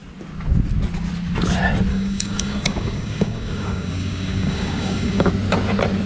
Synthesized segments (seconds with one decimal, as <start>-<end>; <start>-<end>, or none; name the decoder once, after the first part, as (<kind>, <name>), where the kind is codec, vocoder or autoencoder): 1.9-5.3 (codec, DAC)

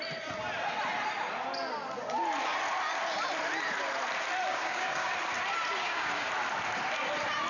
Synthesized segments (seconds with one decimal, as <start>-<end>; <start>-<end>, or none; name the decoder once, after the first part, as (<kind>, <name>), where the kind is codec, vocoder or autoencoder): 4.5-5.1 (codec, DAC); 5.8-6.3

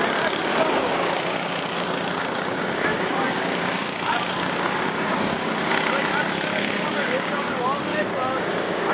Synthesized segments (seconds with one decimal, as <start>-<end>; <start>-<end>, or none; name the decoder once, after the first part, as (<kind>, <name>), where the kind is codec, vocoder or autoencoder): 0.5-5.7 (codec, DAC); 6.5-7.5; 7.9-8.9

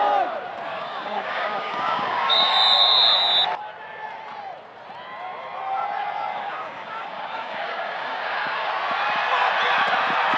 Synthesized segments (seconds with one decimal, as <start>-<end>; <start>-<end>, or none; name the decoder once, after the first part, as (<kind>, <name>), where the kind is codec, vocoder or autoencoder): 0.7-2.5 (codec, DAC); 6.3-8.7